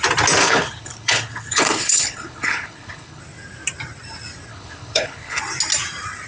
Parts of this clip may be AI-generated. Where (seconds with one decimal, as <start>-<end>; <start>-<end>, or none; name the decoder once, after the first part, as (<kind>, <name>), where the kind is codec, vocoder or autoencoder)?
0.4-3.2 (codec, HILCodec); 4.5-5.4